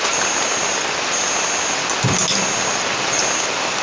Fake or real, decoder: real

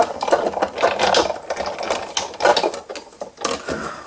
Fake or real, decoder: real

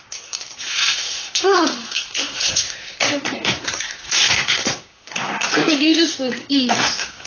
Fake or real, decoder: fake, codec, SNAC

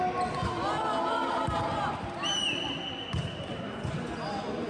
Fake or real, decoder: real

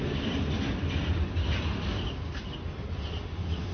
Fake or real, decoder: real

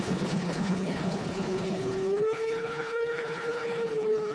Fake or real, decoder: fake, codec, HILCodec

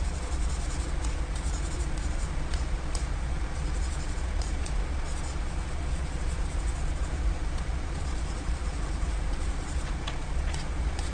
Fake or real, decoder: fake, vocoder, Vocos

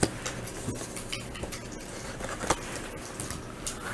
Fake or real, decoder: real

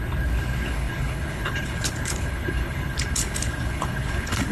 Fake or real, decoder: fake, codec, HILCodec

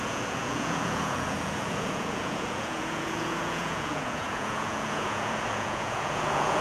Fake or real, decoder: fake, vocoder, Vocos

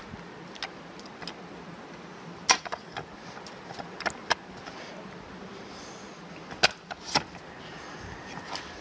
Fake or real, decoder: real